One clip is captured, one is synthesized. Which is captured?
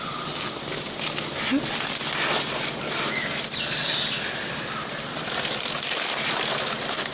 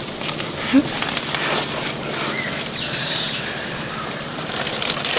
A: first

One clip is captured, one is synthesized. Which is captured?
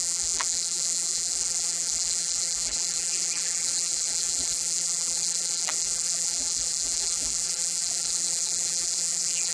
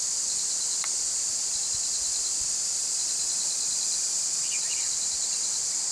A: second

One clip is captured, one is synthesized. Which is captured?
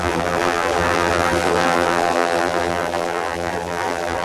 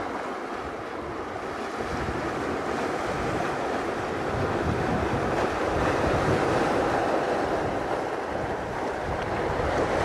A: second